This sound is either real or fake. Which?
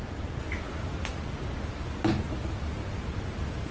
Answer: real